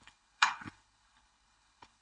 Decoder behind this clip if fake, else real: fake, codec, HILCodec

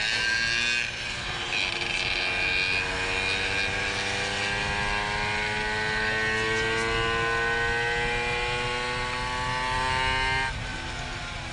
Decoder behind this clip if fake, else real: real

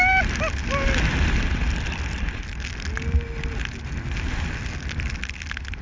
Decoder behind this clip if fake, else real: real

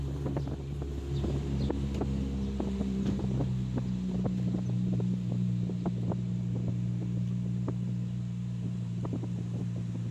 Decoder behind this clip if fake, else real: real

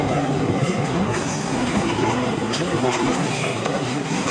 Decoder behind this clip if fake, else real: fake, codec, SNAC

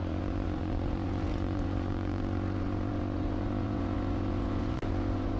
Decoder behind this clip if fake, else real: fake, vocoder, Vocos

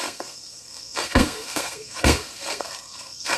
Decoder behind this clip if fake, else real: fake, codec, SNAC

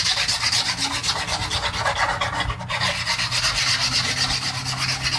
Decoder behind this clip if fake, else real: real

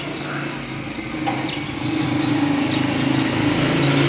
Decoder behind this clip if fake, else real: real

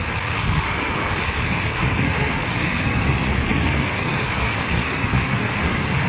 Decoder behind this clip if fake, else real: fake, codec, SNAC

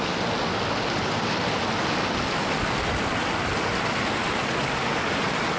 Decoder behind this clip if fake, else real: real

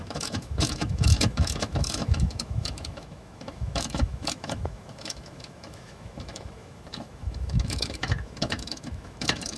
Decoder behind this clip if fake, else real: fake, autoencoder, DAC-VAE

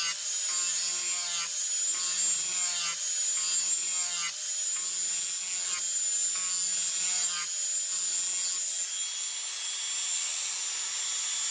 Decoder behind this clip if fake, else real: real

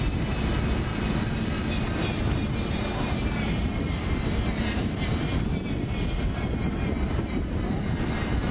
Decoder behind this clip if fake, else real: fake, vocoder, BigVGAN v2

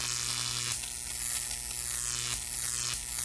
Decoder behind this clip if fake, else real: real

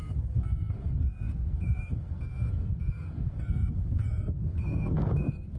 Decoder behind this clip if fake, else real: fake, codec, SNAC